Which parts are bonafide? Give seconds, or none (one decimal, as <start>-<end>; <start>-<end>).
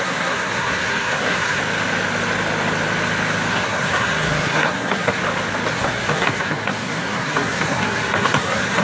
1.6-3.5; 5.2-5.7